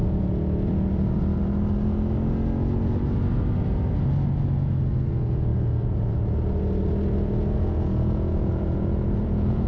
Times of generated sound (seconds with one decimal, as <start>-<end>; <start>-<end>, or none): 5.1-5.5; 7.6-9.7